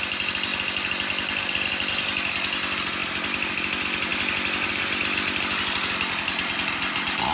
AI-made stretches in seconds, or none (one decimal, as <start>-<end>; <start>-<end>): 0.0-0.5; 1.5-3.0; 3.5-4.1; 4.7-7.3